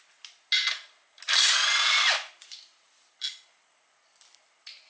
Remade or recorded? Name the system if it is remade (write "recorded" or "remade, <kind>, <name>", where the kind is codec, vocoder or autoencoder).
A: recorded